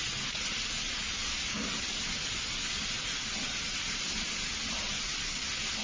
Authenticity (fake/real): real